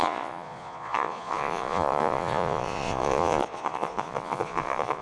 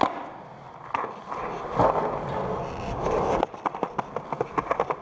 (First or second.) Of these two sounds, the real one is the second